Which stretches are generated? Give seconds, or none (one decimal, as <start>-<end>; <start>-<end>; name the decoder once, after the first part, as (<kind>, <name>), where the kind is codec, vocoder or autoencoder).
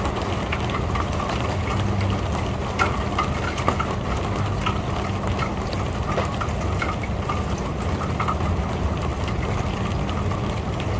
none